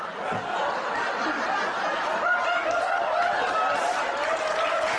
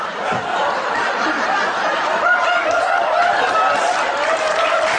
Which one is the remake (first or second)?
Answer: second